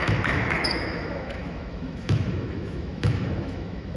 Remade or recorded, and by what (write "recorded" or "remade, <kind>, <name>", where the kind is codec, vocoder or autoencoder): remade, autoencoder, DAC-VAE